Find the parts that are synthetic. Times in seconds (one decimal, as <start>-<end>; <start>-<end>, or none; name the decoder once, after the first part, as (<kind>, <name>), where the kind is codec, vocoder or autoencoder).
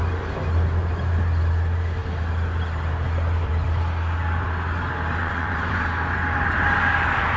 5.2-5.8 (vocoder, Vocos)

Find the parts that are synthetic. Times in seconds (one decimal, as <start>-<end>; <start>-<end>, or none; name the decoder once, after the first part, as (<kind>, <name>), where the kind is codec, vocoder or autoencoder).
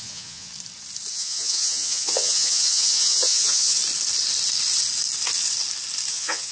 0.0-0.5 (vocoder, Vocos); 1.1-3.8; 6.1-6.5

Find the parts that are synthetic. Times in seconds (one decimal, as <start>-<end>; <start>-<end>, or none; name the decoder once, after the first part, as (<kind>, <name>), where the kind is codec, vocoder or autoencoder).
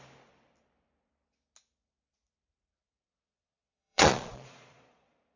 3.1-5.4 (vocoder, Vocos)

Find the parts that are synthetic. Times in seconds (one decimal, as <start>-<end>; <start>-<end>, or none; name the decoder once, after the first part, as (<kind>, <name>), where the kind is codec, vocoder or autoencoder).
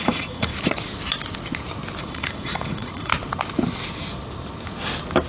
0.0-0.5 (vocoder, Vocos); 2.0-3.1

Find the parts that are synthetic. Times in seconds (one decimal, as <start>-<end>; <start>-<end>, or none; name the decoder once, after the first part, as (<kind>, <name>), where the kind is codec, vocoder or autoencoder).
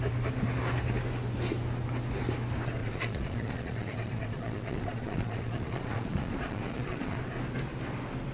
2.8-7.2 (vocoder, Vocos)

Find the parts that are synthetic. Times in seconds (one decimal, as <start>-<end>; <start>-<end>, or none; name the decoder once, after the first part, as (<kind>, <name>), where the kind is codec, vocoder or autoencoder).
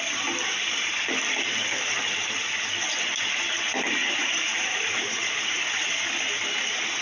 4.0-6.1 (vocoder, Vocos)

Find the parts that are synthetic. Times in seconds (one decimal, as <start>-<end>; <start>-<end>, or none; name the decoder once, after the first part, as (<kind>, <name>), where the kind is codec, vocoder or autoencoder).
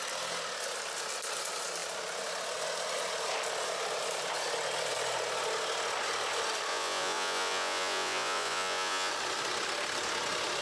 6.7-9.1 (vocoder, Vocos)